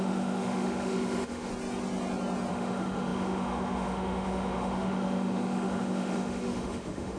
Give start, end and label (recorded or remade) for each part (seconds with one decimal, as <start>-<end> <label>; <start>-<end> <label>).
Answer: 0.0-1.5 remade; 1.5-2.5 recorded; 2.5-7.2 remade